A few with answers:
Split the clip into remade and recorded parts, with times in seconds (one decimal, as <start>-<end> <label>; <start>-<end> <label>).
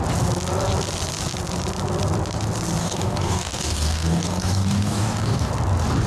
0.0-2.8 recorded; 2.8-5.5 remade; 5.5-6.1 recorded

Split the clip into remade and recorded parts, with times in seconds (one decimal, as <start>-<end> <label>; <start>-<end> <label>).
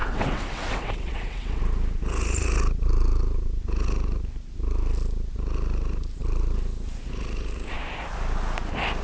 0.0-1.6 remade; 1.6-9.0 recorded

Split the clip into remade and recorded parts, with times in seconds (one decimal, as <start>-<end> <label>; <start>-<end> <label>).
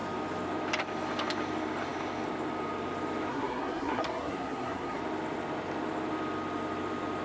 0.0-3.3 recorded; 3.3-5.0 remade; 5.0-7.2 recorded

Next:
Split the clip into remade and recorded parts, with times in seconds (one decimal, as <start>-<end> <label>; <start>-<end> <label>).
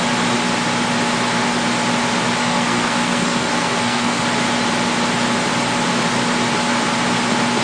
0.0-2.4 recorded; 2.4-4.2 remade; 4.2-7.6 recorded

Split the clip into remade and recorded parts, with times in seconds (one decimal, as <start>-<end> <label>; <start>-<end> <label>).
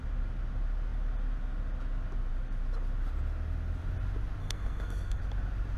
0.0-4.4 recorded; 4.4-5.2 remade; 5.2-5.8 recorded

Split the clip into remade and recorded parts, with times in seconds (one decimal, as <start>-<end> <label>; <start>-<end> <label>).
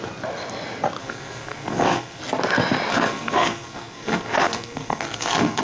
0.0-1.0 recorded; 1.0-2.2 remade; 2.2-2.9 recorded; 2.9-5.6 remade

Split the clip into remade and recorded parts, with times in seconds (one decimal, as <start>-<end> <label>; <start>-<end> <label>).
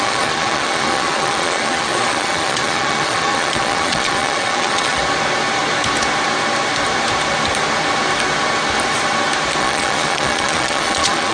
0.0-5.0 remade; 5.0-9.6 recorded; 9.6-11.3 remade